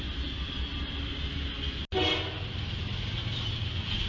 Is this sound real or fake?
real